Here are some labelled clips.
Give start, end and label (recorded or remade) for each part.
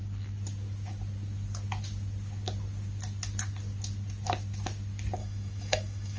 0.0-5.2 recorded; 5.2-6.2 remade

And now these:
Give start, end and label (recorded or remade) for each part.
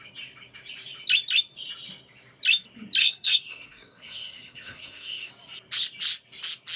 0.0-3.0 recorded; 3.0-5.3 remade; 5.3-6.8 recorded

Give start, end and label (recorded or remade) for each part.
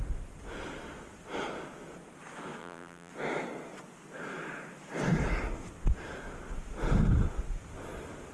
0.0-2.6 recorded; 2.6-3.1 remade; 3.1-8.3 recorded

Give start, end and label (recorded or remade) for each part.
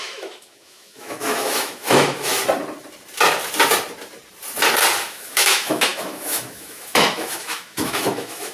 0.0-2.3 remade; 2.3-5.0 recorded; 5.0-8.5 remade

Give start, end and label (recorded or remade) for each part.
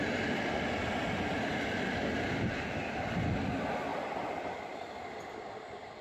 0.0-6.0 recorded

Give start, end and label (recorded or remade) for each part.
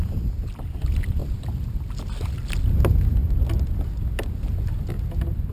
0.0-1.2 recorded; 1.2-1.9 remade; 1.9-5.5 recorded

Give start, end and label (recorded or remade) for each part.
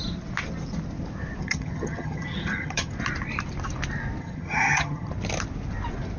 0.0-1.4 recorded; 1.4-2.9 remade; 2.9-4.2 recorded; 4.2-5.1 remade; 5.1-6.2 recorded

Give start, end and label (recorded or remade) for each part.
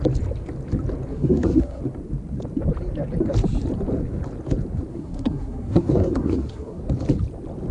0.0-1.1 recorded; 1.1-1.8 remade; 1.8-4.9 recorded; 4.9-6.8 remade; 6.8-7.7 recorded